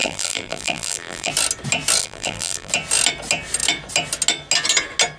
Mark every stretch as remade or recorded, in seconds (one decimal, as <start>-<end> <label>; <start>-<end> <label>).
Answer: 0.0-1.3 remade; 1.3-2.0 recorded; 2.0-2.7 remade; 2.7-5.2 recorded